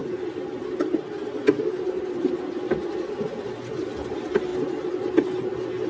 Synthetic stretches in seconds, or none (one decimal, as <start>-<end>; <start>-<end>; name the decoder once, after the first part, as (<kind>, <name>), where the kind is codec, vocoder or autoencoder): none